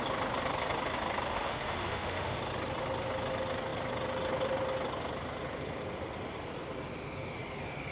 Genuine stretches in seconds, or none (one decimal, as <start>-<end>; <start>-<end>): 0.0-1.3; 2.4-7.9